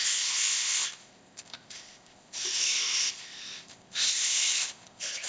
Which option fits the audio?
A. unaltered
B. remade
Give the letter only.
B